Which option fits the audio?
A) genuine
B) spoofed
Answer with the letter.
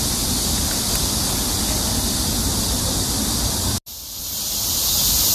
A